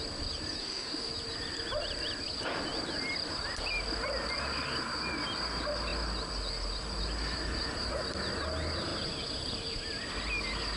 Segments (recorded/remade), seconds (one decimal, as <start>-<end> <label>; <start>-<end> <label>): 0.0-0.6 recorded; 0.6-1.1 remade; 1.1-10.8 recorded